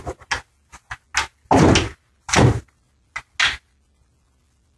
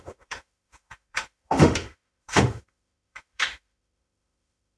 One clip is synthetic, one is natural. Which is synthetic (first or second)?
second